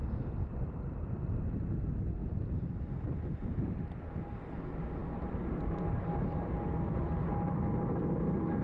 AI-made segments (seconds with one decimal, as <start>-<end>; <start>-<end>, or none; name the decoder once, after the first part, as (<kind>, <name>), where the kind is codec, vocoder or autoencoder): none